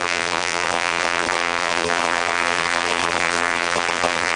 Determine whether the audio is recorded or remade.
remade